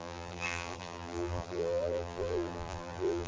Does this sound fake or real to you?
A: fake